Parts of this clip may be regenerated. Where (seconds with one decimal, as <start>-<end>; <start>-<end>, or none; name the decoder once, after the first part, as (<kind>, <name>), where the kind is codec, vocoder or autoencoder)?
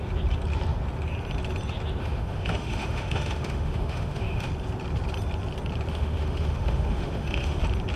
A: 2.0-4.5 (autoencoder, DAC-VAE); 5.9-7.6